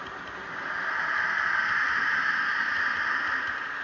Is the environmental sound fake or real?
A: real